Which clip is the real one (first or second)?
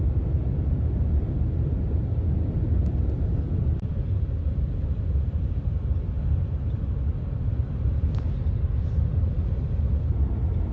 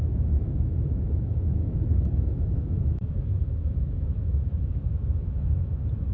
first